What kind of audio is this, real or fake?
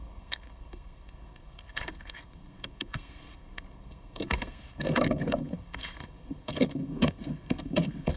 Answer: fake